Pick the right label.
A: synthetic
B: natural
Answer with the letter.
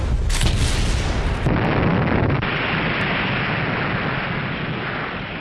B